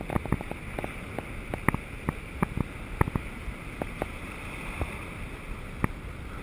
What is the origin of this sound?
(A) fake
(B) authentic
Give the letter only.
B